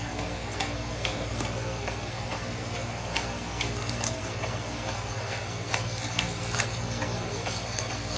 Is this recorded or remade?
remade